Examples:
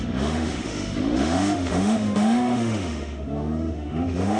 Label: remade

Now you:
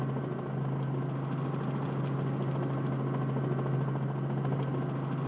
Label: recorded